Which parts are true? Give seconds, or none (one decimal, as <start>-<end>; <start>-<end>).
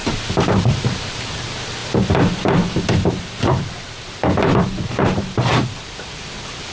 0.0-0.5; 1.8-3.4; 4.2-4.9